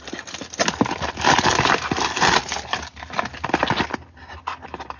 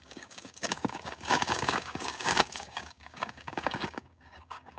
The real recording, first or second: first